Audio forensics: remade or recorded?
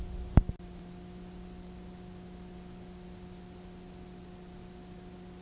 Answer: recorded